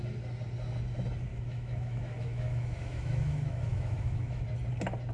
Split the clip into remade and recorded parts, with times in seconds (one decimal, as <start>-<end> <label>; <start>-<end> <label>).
0.0-1.3 recorded; 1.3-4.4 remade; 4.4-5.1 recorded